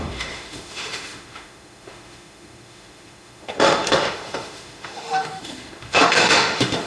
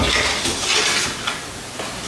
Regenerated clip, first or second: first